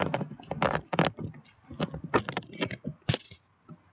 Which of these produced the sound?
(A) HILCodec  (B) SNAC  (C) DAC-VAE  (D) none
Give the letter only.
D